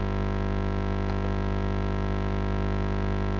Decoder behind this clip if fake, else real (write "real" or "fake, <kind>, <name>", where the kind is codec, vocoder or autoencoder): real